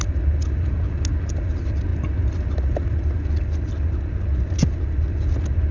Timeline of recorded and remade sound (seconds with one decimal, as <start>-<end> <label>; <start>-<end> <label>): 0.0-5.7 recorded